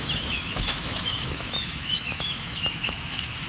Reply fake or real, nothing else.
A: fake